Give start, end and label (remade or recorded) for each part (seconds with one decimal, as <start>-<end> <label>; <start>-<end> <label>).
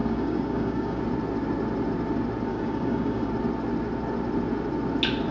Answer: 0.0-1.0 remade; 1.0-2.5 recorded; 2.5-3.3 remade; 3.3-5.3 recorded